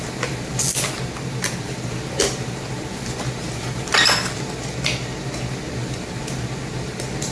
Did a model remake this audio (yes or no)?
no